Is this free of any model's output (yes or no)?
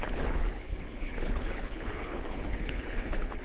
no